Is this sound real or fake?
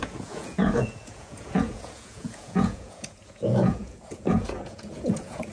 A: fake